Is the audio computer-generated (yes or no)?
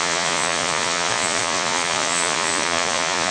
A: yes